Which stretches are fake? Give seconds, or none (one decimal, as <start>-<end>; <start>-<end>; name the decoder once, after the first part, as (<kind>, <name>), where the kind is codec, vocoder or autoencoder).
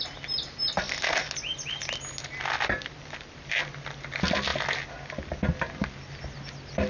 none